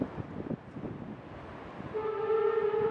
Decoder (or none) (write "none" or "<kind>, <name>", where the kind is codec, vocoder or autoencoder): none